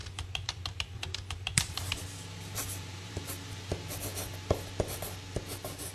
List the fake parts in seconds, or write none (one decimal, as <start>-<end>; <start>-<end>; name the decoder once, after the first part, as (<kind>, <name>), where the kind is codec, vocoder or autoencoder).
0.0-3.5 (vocoder, BigVGAN v2)